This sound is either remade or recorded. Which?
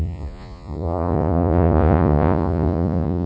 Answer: remade